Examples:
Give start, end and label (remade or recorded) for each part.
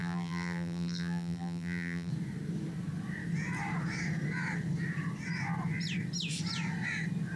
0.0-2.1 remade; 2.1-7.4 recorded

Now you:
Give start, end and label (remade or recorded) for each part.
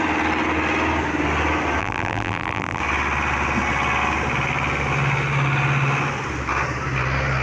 0.0-1.8 recorded; 1.8-2.8 remade; 2.8-7.4 recorded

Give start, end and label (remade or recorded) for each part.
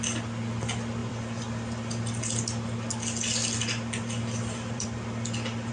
0.0-1.0 recorded; 1.0-2.4 remade; 2.4-3.4 recorded; 3.4-5.7 remade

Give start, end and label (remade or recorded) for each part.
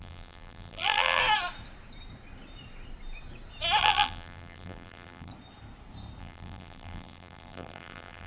0.0-1.2 remade; 1.2-3.8 recorded; 3.8-5.3 remade; 5.3-6.2 recorded; 6.2-8.3 remade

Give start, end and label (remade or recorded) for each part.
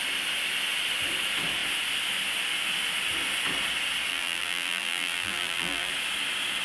0.0-4.1 recorded; 4.1-5.9 remade; 5.9-6.6 recorded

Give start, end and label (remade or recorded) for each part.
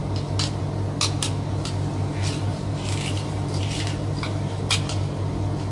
0.0-2.5 recorded; 2.5-4.6 remade; 4.6-5.7 recorded